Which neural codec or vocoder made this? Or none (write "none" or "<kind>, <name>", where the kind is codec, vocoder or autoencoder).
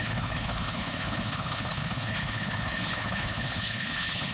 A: codec, HILCodec